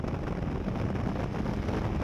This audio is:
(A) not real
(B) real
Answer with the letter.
B